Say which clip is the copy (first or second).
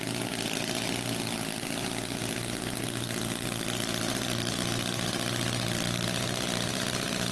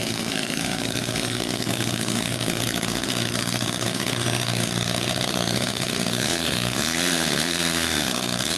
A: second